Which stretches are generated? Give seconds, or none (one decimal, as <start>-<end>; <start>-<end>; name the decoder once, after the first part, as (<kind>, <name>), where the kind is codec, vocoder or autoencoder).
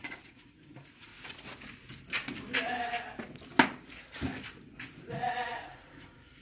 0.0-1.1 (vocoder, Vocos); 4.9-6.4